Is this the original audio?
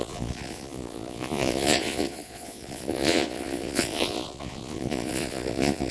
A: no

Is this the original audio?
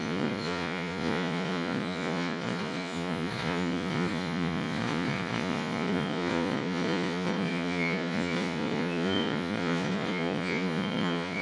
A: no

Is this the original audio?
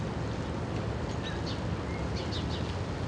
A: yes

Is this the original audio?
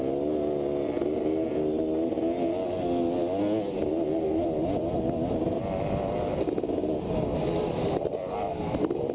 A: yes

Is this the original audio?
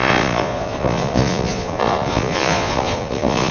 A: no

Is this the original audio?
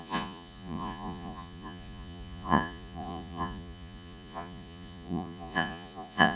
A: no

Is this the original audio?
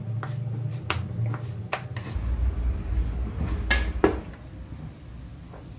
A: yes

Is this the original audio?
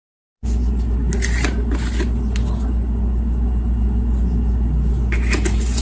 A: yes